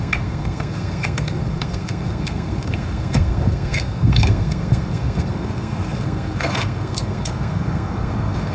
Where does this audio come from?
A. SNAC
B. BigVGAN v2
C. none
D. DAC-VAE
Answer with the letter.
A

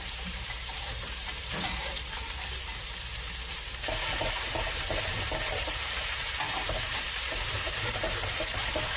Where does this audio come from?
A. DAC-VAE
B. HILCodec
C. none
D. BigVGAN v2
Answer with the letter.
D